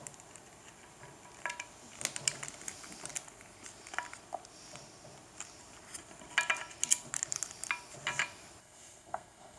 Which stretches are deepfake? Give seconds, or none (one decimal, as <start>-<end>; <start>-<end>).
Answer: 8.6-9.6